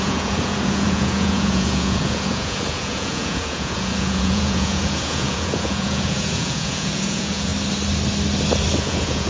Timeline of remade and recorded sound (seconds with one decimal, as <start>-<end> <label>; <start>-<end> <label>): 0.0-7.5 remade; 7.5-8.8 recorded; 8.8-9.3 remade